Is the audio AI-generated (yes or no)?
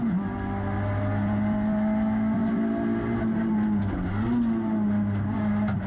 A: no